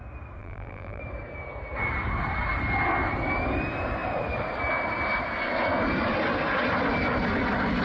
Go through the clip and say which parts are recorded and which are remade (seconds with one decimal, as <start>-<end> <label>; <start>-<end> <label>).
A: 0.0-0.4 recorded; 0.4-1.0 remade; 1.0-7.8 recorded